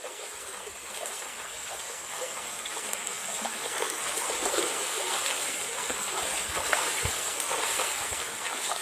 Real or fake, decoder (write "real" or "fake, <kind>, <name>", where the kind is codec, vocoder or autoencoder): fake, codec, SNAC